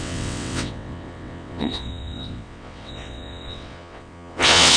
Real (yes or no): no